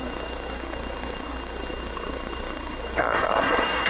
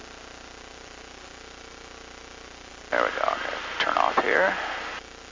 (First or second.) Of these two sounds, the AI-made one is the first